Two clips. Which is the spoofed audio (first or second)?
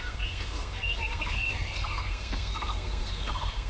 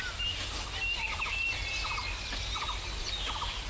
first